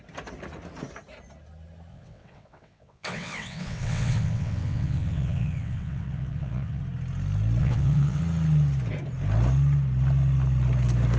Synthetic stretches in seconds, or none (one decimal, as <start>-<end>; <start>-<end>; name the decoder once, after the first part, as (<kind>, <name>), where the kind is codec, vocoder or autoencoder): 1.9-6.8 (vocoder, WaveNeXt); 7.6-8.2